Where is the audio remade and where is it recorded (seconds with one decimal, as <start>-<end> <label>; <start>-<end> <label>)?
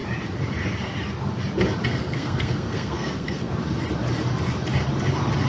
0.0-1.9 recorded; 1.9-3.5 remade; 3.5-5.5 recorded